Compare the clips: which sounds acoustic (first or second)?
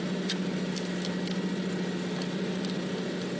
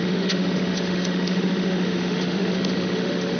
first